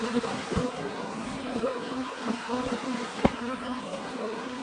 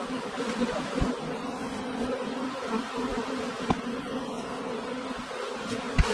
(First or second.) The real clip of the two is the second